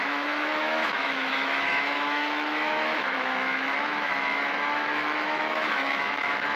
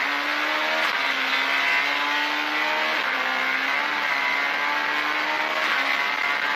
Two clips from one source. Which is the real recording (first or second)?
second